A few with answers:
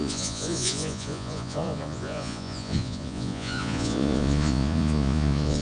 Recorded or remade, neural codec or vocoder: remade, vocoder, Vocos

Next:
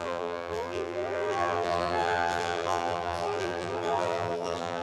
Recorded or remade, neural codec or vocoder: remade, vocoder, BigVGAN v2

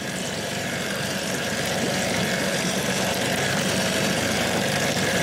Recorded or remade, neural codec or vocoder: remade, vocoder, BigVGAN v2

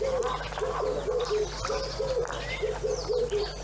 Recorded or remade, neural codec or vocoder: recorded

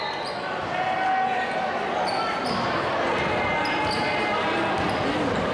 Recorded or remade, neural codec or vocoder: recorded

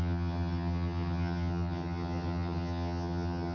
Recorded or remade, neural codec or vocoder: remade, vocoder, HiFi-GAN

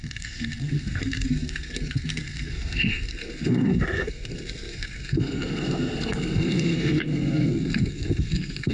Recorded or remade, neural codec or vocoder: remade, codec, SNAC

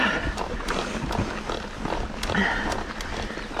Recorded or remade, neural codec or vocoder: recorded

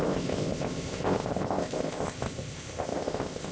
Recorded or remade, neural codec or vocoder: remade, codec, ZipCodec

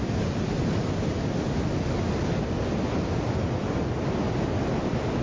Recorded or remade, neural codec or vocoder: recorded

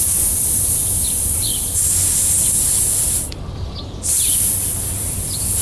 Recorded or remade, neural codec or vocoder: recorded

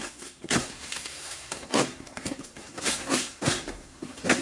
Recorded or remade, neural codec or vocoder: remade, codec, SNAC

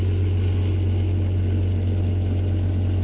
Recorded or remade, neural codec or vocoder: recorded